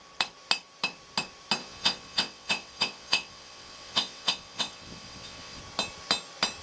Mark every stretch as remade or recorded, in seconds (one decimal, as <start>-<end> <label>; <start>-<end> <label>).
0.0-1.6 recorded; 1.6-5.6 remade; 5.6-6.6 recorded